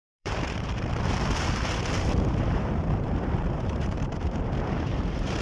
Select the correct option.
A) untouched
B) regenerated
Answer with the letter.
B